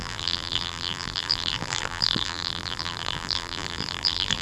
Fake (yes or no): yes